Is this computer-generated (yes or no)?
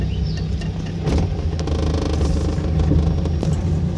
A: no